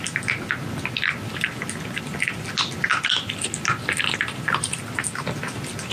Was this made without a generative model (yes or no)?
yes